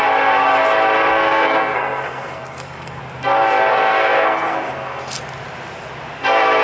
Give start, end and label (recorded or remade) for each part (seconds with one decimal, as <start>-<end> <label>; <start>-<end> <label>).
0.0-1.1 recorded; 1.1-3.0 remade; 3.0-3.4 recorded; 3.4-5.2 remade; 5.2-6.6 recorded